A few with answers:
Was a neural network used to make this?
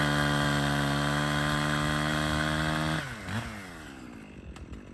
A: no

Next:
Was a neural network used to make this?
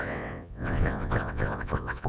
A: yes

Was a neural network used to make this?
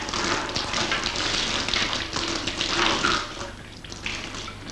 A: no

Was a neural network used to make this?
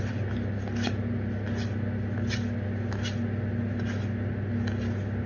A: no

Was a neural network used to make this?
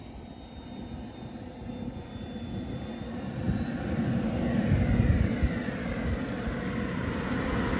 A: no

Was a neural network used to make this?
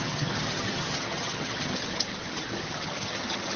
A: yes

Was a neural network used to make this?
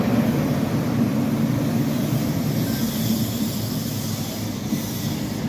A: no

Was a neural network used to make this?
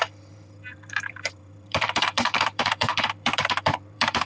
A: yes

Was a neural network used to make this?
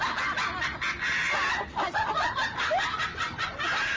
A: no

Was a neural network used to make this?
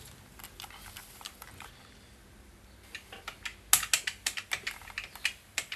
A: no